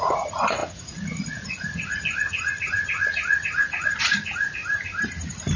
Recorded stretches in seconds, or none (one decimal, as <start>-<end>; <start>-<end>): 4.6-5.6

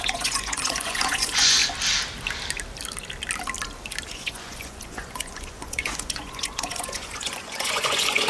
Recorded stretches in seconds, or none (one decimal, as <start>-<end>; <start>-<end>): 1.6-4.1

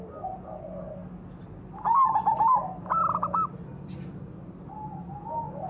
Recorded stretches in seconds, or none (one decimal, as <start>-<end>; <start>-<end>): 0.0-5.7

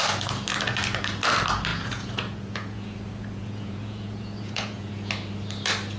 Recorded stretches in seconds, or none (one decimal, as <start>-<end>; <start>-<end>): 0.0-1.7; 4.9-6.0